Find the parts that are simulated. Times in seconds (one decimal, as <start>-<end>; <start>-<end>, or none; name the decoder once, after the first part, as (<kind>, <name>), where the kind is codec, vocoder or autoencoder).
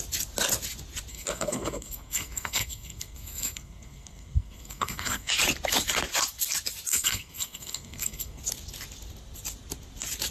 1.1-5.3 (codec, SNAC); 6.9-8.4